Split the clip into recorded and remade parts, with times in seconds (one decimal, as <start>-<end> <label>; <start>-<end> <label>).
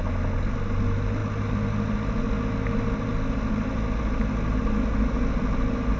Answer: 0.0-6.0 recorded